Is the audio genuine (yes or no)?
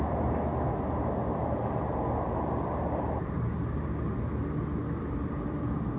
yes